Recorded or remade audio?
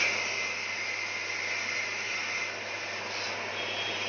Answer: recorded